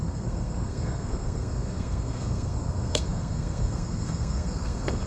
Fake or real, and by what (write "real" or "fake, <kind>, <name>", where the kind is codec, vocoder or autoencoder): fake, codec, SNAC